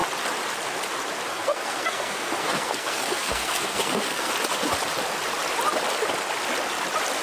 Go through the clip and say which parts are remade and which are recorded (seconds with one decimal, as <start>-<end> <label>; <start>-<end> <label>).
0.0-1.3 recorded; 1.3-4.3 remade; 4.3-7.2 recorded